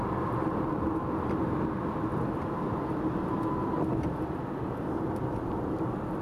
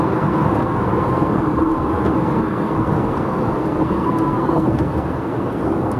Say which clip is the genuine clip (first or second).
first